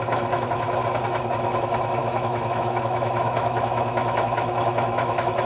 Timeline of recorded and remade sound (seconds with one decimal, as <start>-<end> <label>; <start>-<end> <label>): 0.0-0.8 remade; 0.8-1.4 recorded; 1.4-5.5 remade